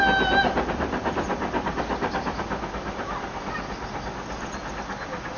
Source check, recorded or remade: recorded